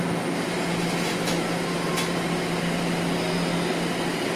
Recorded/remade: recorded